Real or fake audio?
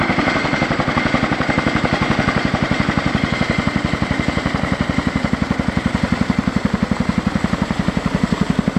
real